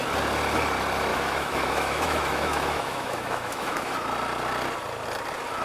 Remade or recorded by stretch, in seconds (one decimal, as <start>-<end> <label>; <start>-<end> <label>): 0.0-1.1 recorded; 1.1-3.9 remade; 3.9-5.6 recorded